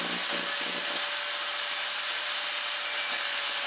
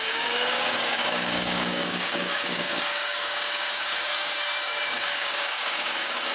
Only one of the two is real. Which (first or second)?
first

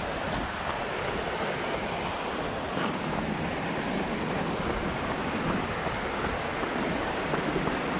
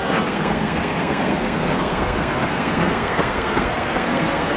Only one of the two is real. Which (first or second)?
first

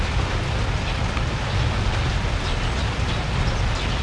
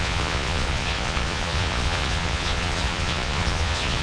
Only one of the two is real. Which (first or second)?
first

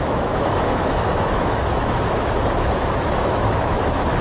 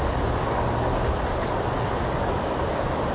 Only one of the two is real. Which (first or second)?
second